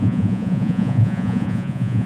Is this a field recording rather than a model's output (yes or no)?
no